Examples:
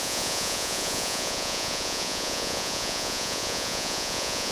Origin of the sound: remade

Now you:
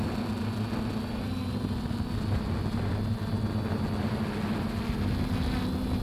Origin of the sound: recorded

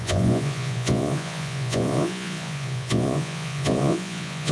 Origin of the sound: remade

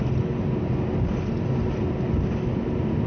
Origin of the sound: recorded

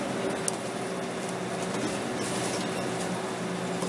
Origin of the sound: recorded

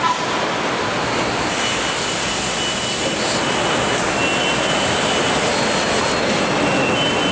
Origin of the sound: recorded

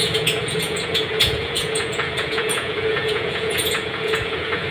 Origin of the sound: remade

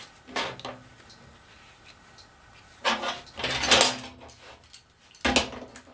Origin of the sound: recorded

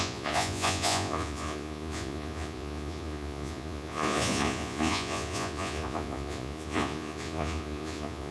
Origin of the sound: remade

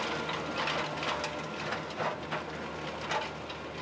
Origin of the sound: recorded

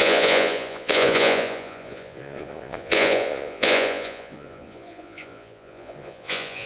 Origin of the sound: remade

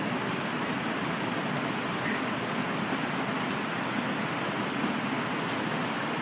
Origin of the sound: recorded